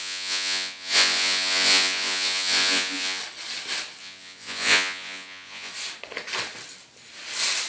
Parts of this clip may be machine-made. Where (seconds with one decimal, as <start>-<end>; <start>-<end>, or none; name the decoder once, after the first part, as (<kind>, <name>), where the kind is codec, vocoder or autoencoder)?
0.0-3.2 (vocoder, Vocos); 4.0-5.7